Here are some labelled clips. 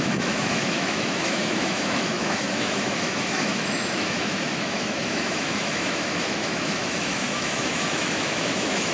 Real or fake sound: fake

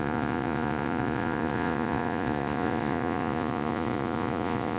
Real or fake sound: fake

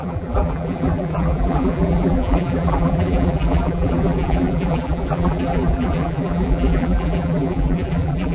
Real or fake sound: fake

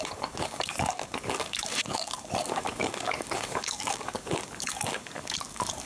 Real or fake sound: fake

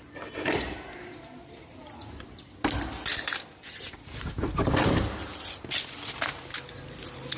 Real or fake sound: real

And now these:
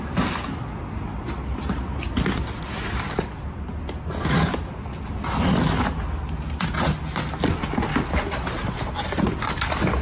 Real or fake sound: real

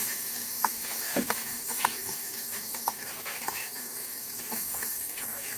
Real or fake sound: fake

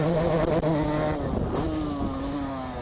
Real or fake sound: real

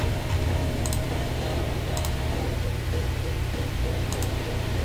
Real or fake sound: fake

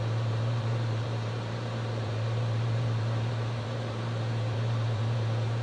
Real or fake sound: fake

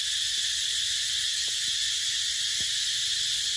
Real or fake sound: real